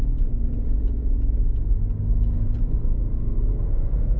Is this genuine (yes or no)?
yes